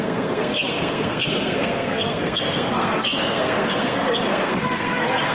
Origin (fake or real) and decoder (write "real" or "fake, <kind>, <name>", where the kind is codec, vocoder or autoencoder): fake, codec, SNAC